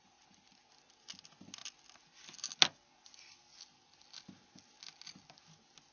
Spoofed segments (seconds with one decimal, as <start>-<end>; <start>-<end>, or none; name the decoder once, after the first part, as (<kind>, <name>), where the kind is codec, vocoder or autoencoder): none